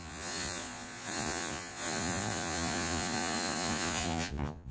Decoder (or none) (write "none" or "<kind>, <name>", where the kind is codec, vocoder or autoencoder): vocoder, Vocos